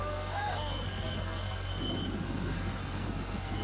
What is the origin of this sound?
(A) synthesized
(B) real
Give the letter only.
A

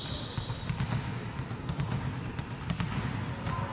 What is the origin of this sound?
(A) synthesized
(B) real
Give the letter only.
B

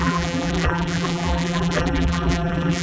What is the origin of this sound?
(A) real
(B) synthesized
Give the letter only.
B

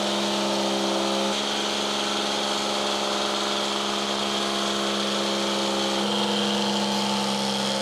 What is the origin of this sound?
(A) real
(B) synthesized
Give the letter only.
A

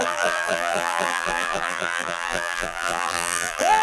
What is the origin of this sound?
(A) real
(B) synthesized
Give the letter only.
B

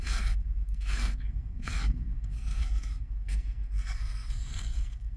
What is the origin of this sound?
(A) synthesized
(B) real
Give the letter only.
A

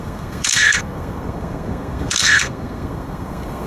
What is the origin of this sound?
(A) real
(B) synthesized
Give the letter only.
B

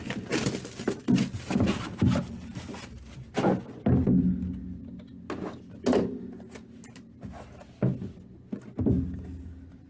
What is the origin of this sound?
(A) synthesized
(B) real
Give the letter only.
B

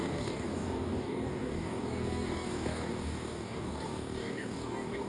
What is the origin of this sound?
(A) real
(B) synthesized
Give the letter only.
B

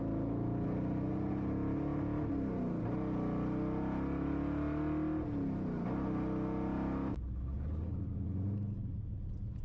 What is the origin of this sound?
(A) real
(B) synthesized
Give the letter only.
A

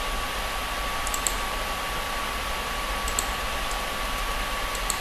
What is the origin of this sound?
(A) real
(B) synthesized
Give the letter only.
A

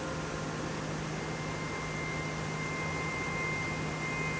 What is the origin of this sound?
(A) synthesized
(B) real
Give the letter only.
B